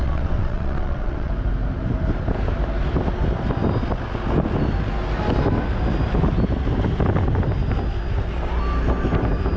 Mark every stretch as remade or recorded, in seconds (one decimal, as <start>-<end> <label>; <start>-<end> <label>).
0.0-1.3 remade; 1.3-9.6 recorded